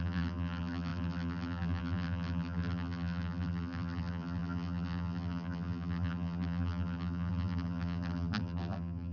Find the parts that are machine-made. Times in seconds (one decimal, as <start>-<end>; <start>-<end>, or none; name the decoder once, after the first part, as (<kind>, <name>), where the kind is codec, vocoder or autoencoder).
0.0-9.1 (vocoder, BigVGAN v2)